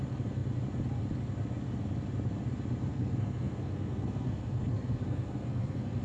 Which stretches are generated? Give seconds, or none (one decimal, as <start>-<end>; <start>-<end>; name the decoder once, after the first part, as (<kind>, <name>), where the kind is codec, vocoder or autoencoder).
2.9-6.0 (codec, SNAC)